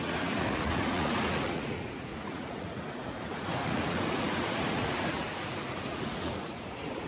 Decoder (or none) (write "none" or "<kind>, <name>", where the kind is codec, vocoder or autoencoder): vocoder, Vocos